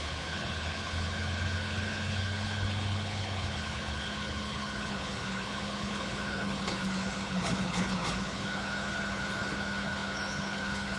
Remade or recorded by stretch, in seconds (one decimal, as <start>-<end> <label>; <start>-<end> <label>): 0.0-11.0 remade